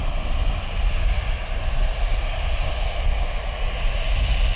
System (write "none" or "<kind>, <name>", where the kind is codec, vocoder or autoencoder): none